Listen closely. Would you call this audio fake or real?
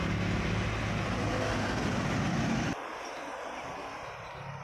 real